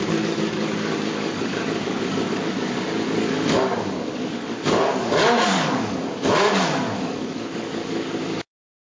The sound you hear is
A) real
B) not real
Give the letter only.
B